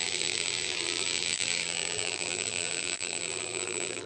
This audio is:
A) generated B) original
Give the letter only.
A